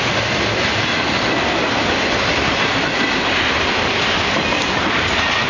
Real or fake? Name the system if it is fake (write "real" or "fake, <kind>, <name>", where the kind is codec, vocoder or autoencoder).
real